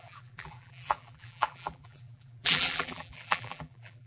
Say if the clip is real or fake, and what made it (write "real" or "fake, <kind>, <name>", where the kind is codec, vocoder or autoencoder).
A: fake, vocoder, BigVGAN v2